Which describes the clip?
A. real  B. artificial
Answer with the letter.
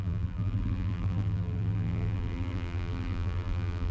B